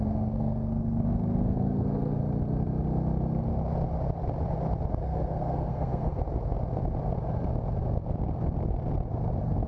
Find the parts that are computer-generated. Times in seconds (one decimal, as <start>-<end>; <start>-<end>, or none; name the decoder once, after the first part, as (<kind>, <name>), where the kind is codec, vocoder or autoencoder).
0.0-2.2 (codec, SNAC); 4.9-6.2